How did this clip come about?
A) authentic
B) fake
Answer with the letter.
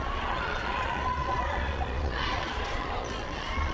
B